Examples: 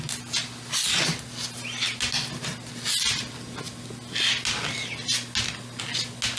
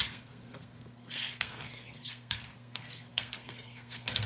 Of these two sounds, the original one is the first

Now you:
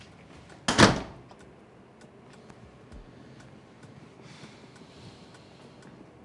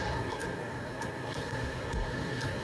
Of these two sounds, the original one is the first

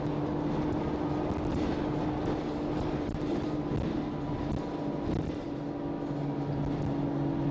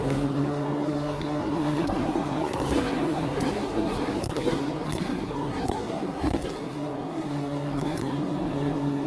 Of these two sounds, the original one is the first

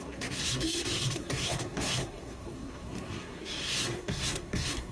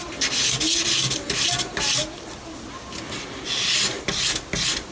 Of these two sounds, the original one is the second